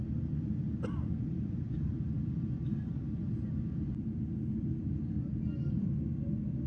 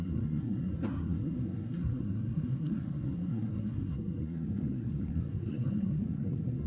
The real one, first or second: first